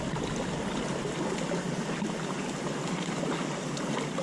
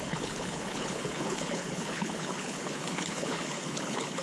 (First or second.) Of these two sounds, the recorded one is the first